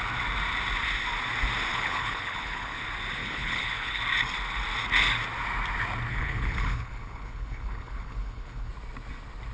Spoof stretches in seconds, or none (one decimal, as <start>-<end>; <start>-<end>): 1.7-2.8; 3.2-4.0; 6.1-8.7